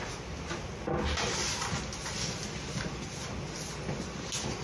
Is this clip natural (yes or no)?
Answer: yes